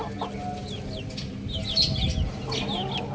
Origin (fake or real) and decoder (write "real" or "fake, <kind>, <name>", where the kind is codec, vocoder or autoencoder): real